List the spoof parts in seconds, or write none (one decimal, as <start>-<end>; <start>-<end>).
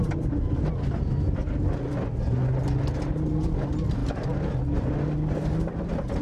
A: none